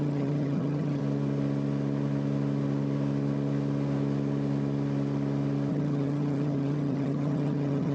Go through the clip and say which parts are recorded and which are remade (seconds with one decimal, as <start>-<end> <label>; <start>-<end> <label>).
0.0-1.0 remade; 1.0-5.7 recorded; 5.7-7.9 remade